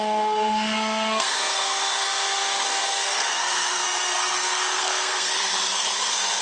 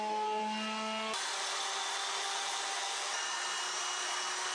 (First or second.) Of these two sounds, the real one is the second